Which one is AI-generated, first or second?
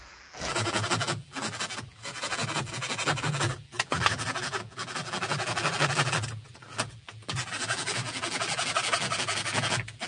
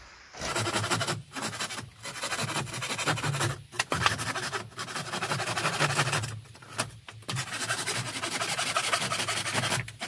first